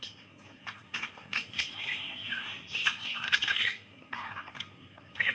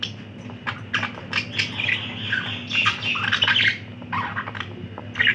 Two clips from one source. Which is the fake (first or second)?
first